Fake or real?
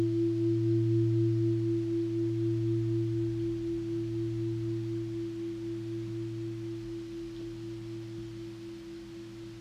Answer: real